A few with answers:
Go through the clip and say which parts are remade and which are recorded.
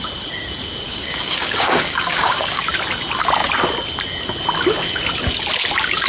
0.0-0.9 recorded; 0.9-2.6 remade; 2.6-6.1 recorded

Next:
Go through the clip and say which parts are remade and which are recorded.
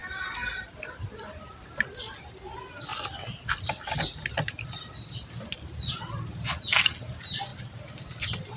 0.0-1.2 remade; 1.2-2.9 recorded; 2.9-6.6 remade; 6.6-7.5 recorded; 7.5-8.6 remade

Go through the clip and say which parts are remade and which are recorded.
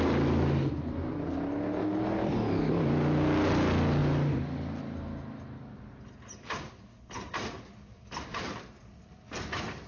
0.0-9.9 recorded